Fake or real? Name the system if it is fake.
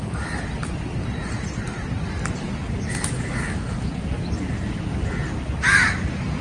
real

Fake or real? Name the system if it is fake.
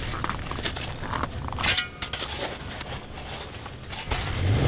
real